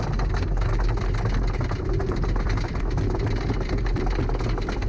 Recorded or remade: recorded